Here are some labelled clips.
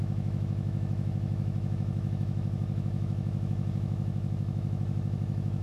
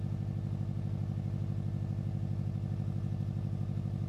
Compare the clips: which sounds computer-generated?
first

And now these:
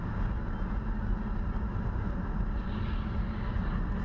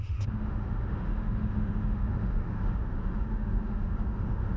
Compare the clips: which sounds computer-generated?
second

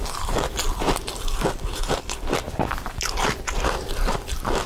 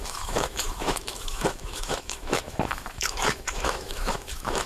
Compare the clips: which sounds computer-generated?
second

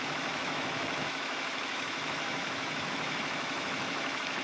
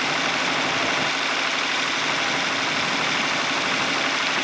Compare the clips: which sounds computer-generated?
first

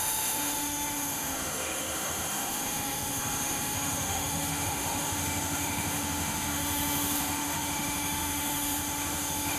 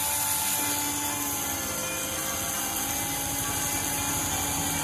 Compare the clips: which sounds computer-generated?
first